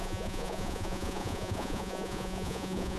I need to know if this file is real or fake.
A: fake